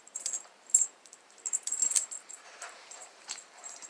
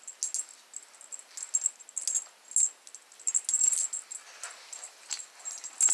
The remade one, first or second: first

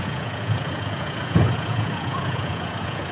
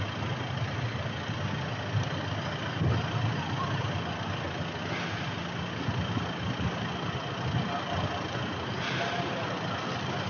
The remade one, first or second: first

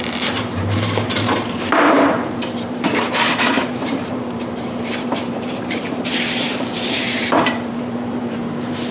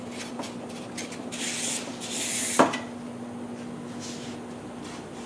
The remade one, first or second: first